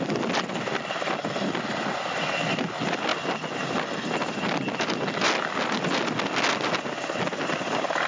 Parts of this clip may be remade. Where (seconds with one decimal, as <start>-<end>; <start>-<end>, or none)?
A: none